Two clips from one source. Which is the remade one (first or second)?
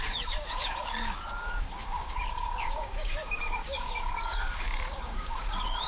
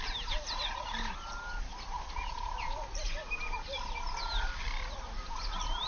first